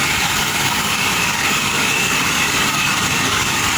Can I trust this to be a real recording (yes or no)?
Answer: no